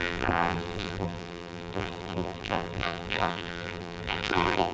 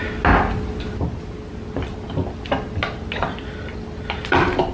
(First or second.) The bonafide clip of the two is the second